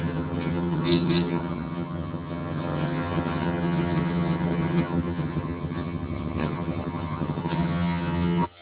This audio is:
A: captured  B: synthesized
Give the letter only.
B